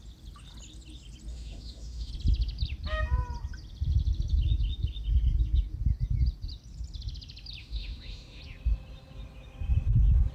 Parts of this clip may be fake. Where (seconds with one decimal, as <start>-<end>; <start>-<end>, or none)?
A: 1.3-2.1; 7.6-8.4